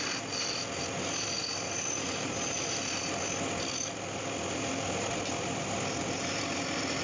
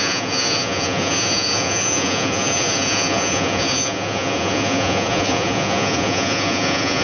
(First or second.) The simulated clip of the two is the second